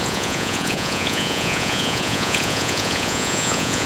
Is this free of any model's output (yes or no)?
no